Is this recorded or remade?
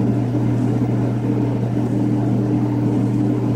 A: recorded